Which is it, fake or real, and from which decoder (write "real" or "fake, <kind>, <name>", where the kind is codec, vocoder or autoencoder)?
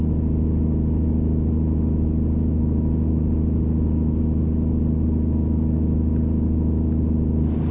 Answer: real